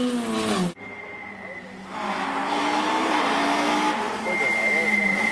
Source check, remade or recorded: recorded